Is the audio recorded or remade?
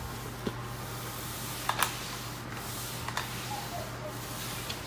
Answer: recorded